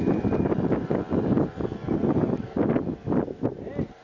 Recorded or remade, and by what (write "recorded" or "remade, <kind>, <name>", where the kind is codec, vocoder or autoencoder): recorded